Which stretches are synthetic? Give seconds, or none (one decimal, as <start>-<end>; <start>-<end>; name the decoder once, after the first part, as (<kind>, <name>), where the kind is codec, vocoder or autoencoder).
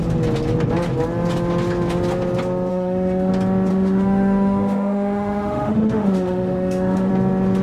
2.7-3.3 (autoencoder, DAC-VAE); 3.7-7.1